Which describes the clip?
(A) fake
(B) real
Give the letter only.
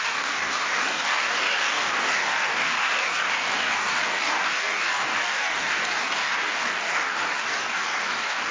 A